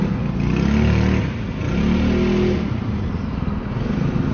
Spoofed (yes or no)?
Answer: no